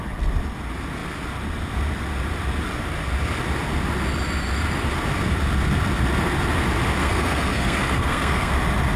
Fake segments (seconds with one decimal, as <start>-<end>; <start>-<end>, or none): 7.0-8.5

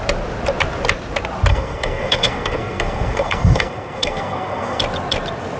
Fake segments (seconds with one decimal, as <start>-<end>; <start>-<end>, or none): 1.5-4.8

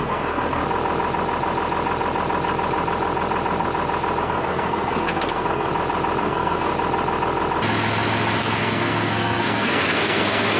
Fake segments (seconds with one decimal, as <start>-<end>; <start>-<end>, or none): 0.0-0.6; 4.2-5.7; 6.2-6.7; 8.4-10.6

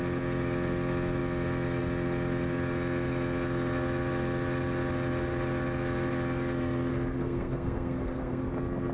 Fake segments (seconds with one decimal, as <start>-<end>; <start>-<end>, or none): 6.9-8.5

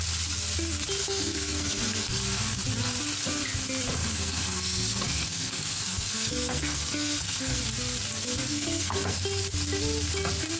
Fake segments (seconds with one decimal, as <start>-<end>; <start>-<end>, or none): 1.0-2.6; 4.0-7.6; 8.2-9.2

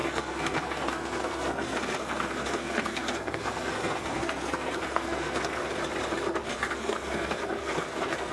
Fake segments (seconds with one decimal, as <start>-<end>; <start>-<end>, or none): 0.0-5.6; 6.5-8.3